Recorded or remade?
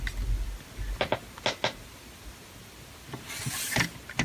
recorded